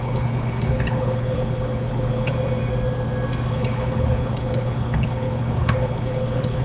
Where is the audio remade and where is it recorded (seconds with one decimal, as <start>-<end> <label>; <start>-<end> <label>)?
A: 0.0-2.3 remade; 2.3-3.5 recorded; 3.5-6.6 remade